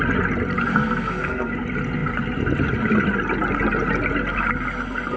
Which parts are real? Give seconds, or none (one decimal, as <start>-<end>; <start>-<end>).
0.0-0.7; 1.5-5.2